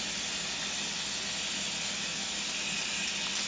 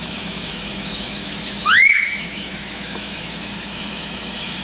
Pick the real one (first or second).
first